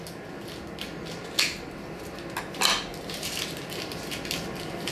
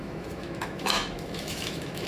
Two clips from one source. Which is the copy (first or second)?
second